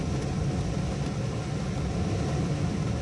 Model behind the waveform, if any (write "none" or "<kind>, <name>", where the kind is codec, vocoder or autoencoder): none